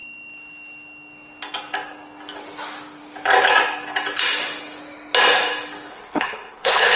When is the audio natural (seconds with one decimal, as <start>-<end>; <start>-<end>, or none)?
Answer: 0.0-5.9